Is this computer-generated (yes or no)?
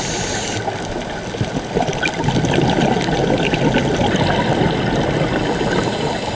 no